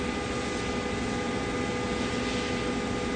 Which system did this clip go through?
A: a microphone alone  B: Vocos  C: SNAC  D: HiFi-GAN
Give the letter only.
A